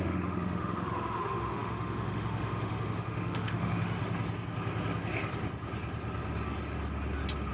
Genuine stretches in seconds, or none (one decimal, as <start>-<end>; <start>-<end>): 4.0-7.5